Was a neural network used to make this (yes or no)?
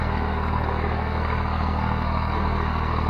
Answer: yes